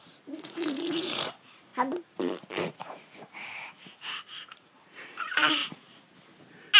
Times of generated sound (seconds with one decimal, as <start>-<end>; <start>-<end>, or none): 0.0-1.7; 2.6-5.6